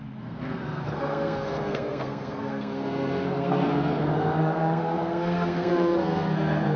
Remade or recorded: remade